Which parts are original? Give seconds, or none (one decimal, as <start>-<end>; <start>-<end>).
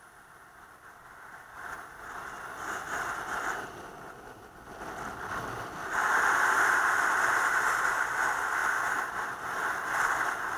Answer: 0.0-10.6